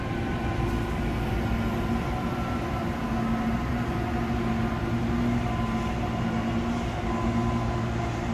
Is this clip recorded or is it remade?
recorded